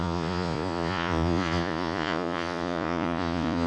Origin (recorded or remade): remade